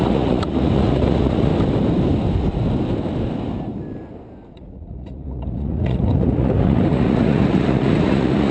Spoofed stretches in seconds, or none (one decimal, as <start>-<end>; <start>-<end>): 0.0-1.5; 4.4-8.5